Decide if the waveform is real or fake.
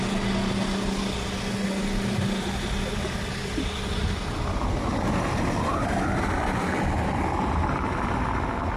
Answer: real